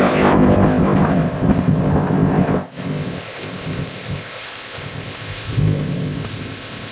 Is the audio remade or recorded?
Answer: remade